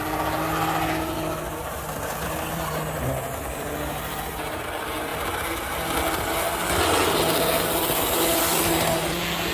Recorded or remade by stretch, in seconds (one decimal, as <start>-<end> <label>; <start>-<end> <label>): 0.0-9.5 recorded